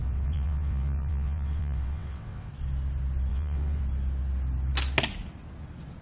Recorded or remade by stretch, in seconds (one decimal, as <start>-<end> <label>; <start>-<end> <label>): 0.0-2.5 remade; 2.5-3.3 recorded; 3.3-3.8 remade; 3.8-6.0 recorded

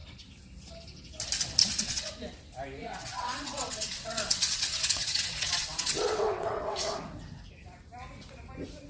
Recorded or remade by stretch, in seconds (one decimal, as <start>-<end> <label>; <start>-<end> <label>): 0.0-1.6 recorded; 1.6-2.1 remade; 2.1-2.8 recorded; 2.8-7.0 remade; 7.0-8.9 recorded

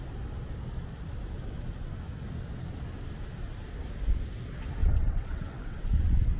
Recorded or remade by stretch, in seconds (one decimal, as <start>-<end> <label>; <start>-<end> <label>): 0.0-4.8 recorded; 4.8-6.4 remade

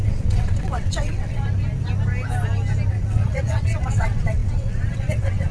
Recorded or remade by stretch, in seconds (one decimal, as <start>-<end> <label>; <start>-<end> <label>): 0.0-1.4 remade; 1.4-2.9 recorded; 2.9-5.5 remade

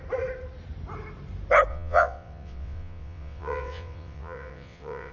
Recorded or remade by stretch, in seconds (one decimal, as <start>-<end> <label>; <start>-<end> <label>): 0.0-1.7 recorded; 1.7-5.1 remade

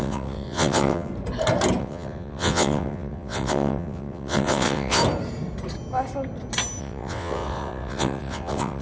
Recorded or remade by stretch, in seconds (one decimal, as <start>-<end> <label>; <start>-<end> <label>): 0.0-1.1 remade; 1.1-1.8 recorded; 1.8-5.0 remade; 5.0-6.8 recorded; 6.8-8.8 remade

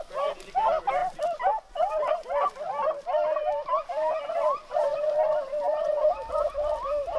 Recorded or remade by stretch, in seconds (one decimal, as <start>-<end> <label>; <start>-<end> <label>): 0.0-7.2 recorded